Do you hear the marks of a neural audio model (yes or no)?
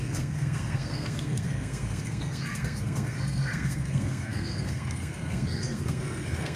yes